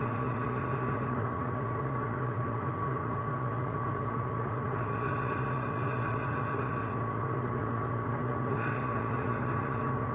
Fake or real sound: fake